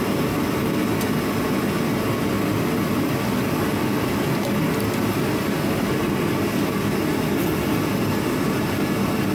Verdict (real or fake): real